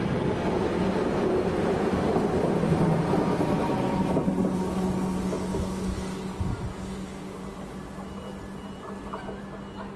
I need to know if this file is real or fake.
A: real